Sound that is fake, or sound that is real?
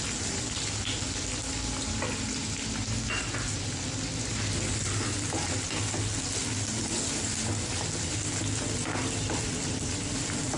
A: real